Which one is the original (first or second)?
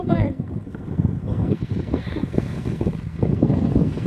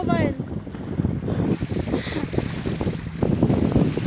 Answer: second